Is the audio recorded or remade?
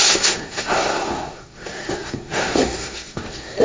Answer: remade